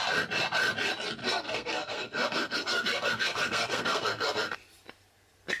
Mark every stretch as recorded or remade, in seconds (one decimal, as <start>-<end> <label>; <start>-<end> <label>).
0.0-1.2 recorded; 1.2-4.6 remade; 4.6-5.6 recorded